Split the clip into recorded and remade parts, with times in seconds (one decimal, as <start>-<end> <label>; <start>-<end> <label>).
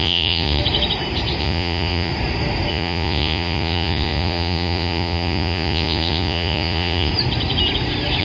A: 0.0-0.6 remade; 0.6-1.4 recorded; 1.4-2.1 remade; 2.1-2.7 recorded; 2.7-7.1 remade; 7.1-8.2 recorded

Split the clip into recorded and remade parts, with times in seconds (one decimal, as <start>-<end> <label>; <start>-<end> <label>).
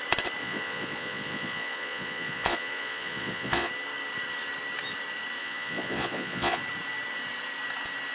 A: 0.0-0.4 recorded; 0.4-3.7 remade; 3.7-5.4 recorded; 5.4-6.6 remade; 6.6-8.1 recorded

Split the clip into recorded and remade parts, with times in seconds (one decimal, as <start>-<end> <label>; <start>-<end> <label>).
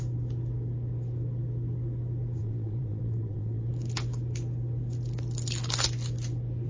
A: 0.0-2.4 recorded; 2.4-3.7 remade; 3.7-6.7 recorded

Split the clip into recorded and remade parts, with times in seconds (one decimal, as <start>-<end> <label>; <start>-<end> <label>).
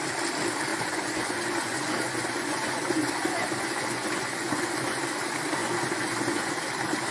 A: 0.0-0.7 recorded; 0.7-5.0 remade; 5.0-5.6 recorded; 5.6-6.5 remade; 6.5-7.1 recorded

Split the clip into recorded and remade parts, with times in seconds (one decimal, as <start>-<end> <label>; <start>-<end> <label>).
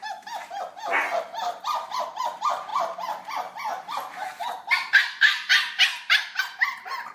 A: 0.0-7.1 recorded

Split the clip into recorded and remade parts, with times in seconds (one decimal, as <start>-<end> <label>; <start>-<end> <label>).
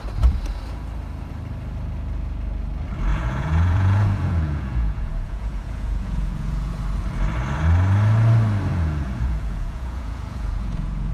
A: 0.0-3.1 recorded; 3.1-6.8 remade; 6.8-8.7 recorded; 8.7-11.1 remade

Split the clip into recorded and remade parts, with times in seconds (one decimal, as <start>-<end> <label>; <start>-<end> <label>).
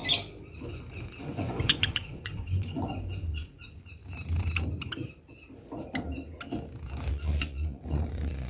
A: 0.0-0.7 recorded; 0.7-4.0 remade; 4.0-7.1 recorded; 7.1-8.5 remade